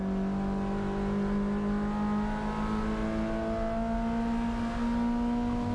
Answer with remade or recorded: recorded